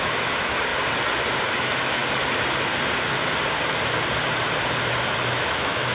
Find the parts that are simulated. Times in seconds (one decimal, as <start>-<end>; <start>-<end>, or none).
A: 0.0-0.7; 1.4-2.0; 5.3-5.9